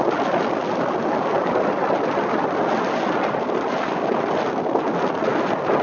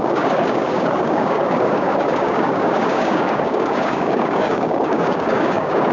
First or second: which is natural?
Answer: first